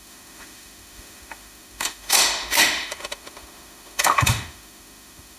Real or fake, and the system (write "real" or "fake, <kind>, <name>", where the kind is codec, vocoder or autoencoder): fake, autoencoder, DAC-VAE